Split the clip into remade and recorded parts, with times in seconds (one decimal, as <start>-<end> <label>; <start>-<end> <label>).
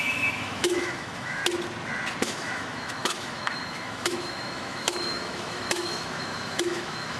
0.0-1.4 remade; 1.4-2.2 recorded; 2.2-7.2 remade